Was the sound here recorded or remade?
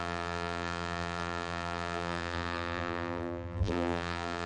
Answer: remade